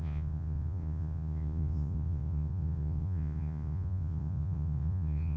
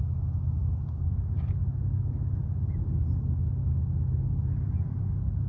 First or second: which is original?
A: second